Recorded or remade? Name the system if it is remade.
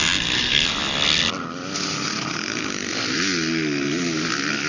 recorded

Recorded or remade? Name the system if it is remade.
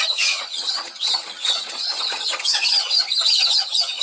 remade, vocoder, HiFi-GAN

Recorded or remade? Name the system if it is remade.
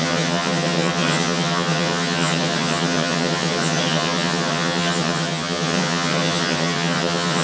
remade, vocoder, HiFi-GAN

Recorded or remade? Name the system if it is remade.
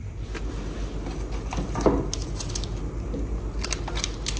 recorded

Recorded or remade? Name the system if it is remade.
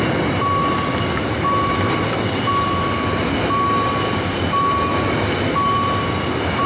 recorded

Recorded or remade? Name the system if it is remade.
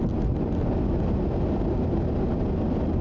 recorded